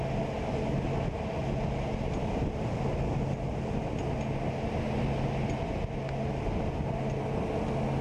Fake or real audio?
real